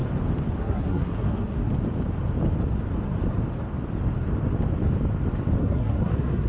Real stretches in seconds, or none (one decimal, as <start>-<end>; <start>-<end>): 0.0-0.6; 1.7-5.6